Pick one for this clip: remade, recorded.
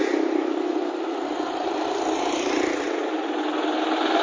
recorded